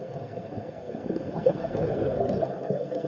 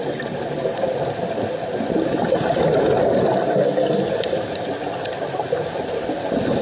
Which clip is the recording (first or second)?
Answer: second